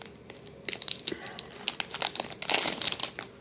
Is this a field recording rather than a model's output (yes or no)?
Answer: yes